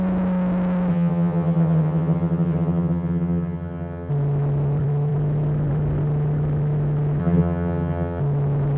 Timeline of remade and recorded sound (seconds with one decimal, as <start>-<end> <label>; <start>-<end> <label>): 0.0-0.9 recorded; 0.9-4.1 remade; 4.1-7.2 recorded; 7.2-8.2 remade; 8.2-8.8 recorded